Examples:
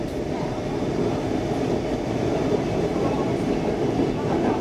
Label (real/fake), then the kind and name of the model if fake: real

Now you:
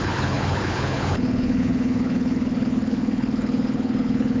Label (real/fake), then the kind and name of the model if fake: fake, codec, HILCodec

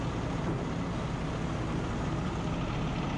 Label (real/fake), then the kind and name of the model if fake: real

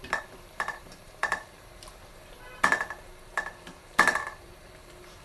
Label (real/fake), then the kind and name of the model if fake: fake, vocoder, BigVGAN v2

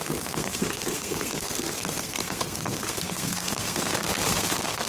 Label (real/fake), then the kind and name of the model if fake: fake, codec, SNAC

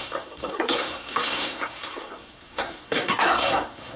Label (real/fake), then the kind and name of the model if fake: fake, codec, SNAC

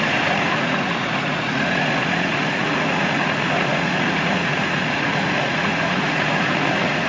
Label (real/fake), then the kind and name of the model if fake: fake, vocoder, Vocos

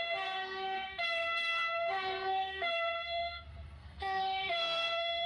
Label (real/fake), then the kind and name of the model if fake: fake, codec, SNAC